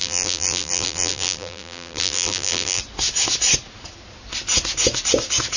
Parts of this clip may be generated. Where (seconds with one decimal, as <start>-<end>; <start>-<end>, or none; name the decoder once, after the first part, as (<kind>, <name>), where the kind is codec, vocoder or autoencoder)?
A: 0.0-2.8 (vocoder, BigVGAN v2)

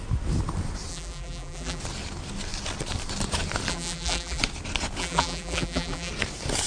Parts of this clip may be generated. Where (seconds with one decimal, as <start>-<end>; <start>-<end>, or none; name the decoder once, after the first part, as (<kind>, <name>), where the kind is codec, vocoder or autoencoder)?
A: 0.9-1.8 (vocoder, BigVGAN v2); 3.7-4.4; 5.0-6.1

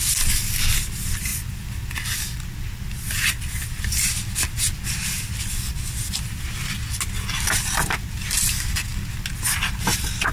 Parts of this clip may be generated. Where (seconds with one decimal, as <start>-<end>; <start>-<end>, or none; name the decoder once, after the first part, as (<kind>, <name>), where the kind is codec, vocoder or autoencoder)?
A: none

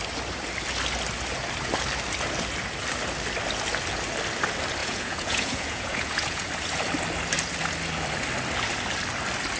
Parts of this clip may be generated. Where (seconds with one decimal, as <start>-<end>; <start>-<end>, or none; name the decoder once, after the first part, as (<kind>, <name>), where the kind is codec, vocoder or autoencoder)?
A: 4.8-6.5 (vocoder, Vocos)

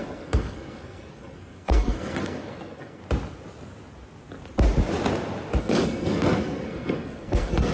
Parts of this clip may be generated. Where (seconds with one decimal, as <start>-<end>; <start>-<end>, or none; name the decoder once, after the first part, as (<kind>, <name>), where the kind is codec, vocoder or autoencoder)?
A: 0.0-3.0 (codec, SNAC); 5.6-7.7

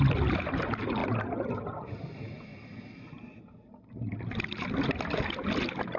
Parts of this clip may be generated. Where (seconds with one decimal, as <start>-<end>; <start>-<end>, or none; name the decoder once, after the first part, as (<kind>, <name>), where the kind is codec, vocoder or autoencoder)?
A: none